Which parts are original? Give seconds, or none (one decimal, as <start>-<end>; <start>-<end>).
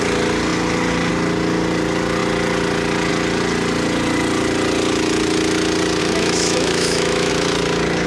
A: 0.0-6.0; 7.3-8.1